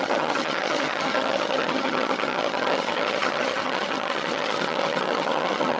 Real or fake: fake